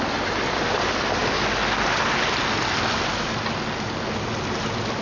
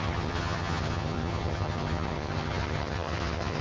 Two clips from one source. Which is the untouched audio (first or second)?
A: first